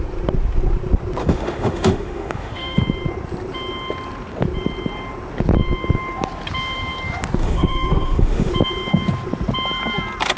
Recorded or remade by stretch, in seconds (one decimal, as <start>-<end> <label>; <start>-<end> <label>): 0.0-1.2 recorded; 1.2-2.8 remade; 2.8-7.4 recorded; 7.4-8.5 remade; 8.5-10.4 recorded